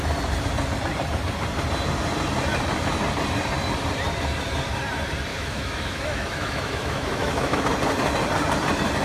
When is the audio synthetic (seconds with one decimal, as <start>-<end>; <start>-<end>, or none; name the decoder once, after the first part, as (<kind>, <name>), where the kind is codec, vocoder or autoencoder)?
5.3-7.6 (autoencoder, DAC-VAE)